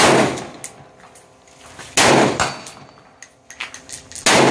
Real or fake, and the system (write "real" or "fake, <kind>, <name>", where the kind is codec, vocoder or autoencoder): real